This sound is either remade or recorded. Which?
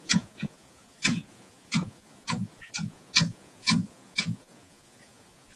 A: remade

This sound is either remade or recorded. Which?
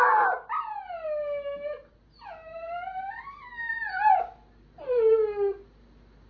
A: recorded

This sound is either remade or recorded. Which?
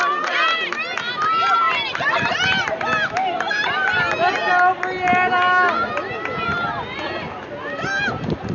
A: recorded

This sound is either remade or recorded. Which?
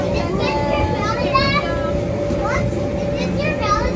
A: recorded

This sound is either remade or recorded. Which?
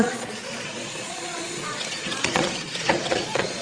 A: remade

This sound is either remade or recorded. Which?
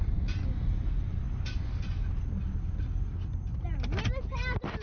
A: recorded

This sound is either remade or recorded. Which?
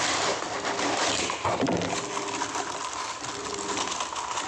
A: recorded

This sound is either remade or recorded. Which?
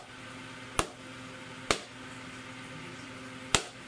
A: recorded